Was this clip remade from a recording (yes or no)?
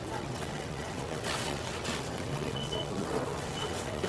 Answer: yes